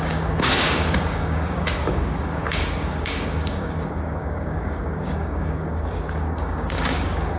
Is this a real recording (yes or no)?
no